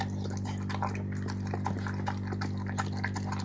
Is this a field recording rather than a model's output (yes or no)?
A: yes